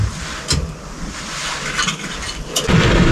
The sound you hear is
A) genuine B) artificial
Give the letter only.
A